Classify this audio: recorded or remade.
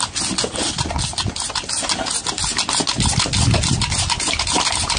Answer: recorded